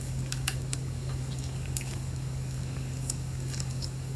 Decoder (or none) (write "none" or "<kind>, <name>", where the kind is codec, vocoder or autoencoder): codec, DAC